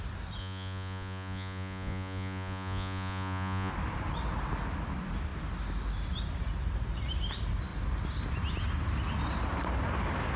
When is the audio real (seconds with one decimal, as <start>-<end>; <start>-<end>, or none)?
0.0-0.4; 3.7-10.4